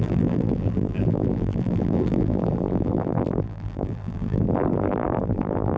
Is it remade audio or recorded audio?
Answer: remade